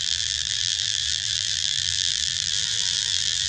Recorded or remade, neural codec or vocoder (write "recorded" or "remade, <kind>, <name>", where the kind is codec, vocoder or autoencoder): remade, vocoder, BigVGAN v2